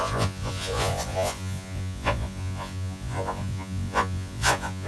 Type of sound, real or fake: fake